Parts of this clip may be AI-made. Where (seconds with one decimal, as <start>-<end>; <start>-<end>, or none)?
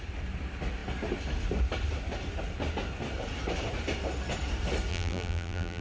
4.9-5.8